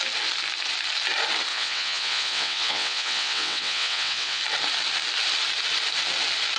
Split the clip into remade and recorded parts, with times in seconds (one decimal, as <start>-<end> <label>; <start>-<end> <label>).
0.0-1.5 recorded; 1.5-4.4 remade; 4.4-6.6 recorded

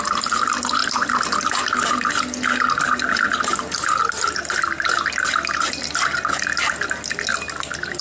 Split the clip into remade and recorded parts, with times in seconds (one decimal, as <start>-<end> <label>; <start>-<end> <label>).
0.0-8.0 recorded

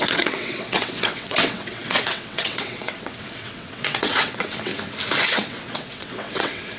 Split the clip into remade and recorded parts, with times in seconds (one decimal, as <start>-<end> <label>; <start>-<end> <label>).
0.0-4.7 remade; 4.7-5.3 recorded; 5.3-6.8 remade